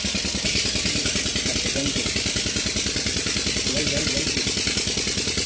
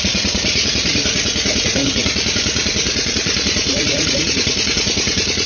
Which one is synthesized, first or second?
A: second